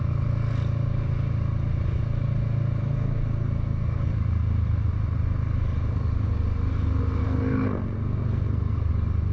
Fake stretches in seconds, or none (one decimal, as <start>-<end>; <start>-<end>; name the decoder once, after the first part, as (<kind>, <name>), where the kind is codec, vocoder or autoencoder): 2.8-4.1 (codec, SNAC); 7.2-8.9